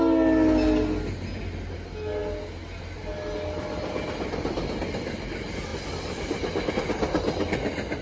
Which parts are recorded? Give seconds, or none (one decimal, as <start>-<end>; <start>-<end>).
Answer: 0.0-5.7; 6.7-8.0